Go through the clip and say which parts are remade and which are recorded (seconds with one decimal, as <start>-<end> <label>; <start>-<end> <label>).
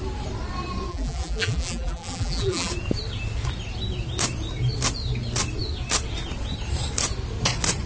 0.0-0.9 recorded; 0.9-2.7 remade; 2.7-7.9 recorded